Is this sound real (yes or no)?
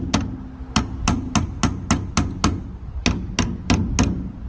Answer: yes